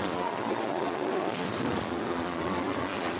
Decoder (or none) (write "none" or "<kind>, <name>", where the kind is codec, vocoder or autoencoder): vocoder, Vocos